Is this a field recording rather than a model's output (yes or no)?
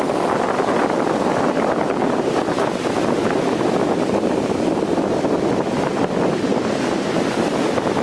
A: yes